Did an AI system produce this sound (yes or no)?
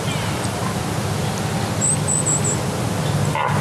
no